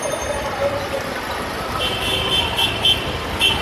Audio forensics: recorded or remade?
recorded